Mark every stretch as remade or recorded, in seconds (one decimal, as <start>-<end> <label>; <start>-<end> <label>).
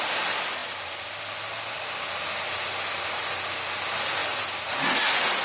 0.0-5.4 recorded